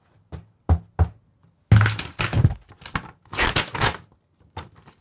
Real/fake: real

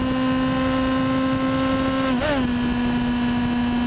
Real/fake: real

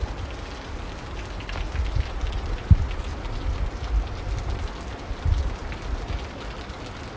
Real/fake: real